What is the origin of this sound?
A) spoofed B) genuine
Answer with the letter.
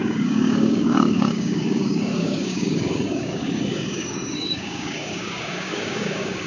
A